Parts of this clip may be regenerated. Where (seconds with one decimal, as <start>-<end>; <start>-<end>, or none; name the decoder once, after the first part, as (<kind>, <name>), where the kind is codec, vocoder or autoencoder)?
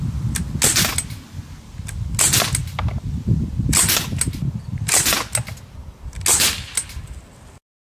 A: none